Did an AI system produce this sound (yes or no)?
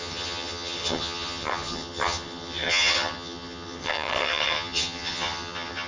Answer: yes